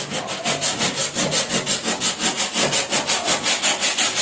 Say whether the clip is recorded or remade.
recorded